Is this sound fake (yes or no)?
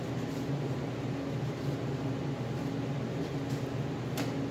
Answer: no